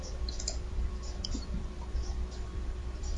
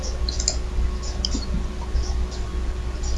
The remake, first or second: first